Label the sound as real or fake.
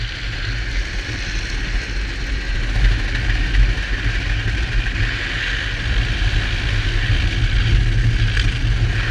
real